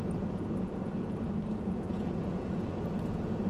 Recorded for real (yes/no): no